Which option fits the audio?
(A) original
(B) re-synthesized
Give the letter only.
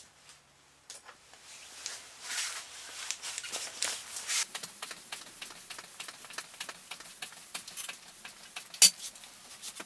A